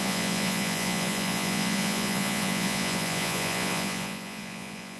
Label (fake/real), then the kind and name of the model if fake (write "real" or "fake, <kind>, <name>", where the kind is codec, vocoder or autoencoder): fake, vocoder, Vocos